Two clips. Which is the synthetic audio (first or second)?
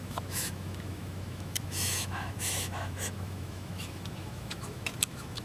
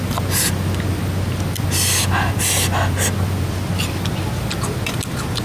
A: first